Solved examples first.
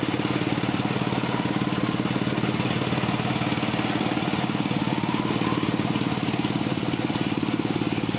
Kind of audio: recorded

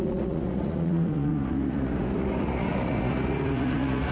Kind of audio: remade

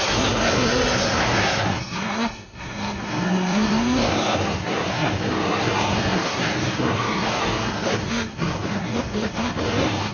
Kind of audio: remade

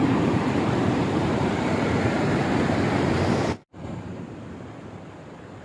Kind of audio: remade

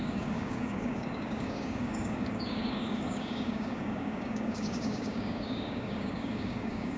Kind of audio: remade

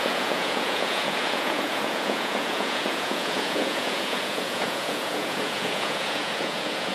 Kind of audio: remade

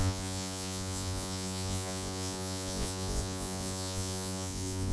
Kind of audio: remade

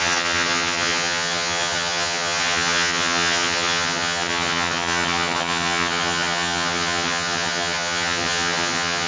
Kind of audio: remade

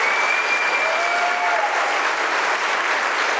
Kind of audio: recorded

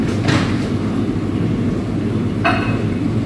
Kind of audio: recorded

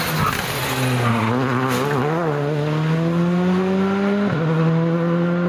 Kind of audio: recorded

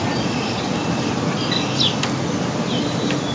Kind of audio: recorded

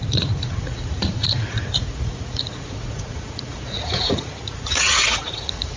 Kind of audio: remade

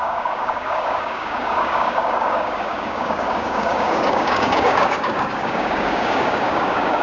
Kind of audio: remade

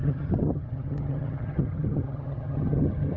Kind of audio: remade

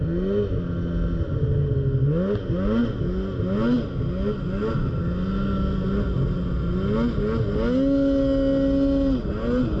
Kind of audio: recorded